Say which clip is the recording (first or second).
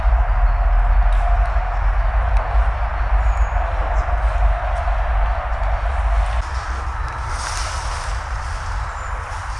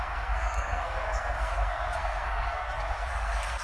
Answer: first